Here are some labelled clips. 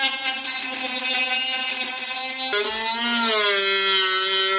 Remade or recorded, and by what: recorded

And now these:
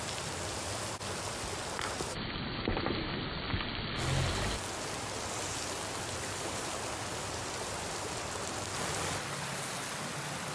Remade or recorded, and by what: recorded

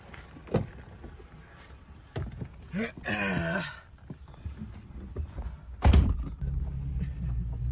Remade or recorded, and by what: recorded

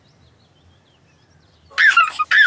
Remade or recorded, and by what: recorded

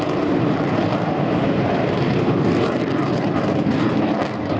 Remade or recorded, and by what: remade, vocoder, BigVGAN v2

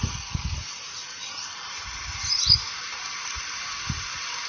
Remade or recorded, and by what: recorded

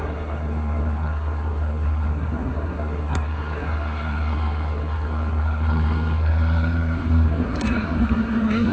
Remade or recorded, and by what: remade, codec, SNAC